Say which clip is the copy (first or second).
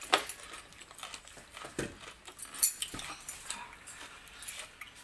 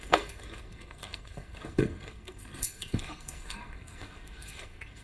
second